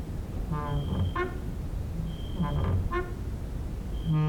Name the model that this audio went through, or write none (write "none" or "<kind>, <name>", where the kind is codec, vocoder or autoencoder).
none